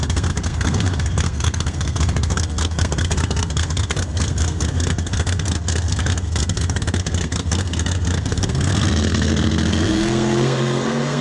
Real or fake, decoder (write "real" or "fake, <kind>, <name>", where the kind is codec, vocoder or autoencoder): fake, codec, SNAC